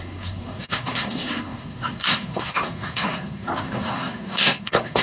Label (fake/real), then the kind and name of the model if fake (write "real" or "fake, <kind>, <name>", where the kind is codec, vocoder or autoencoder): fake, codec, SNAC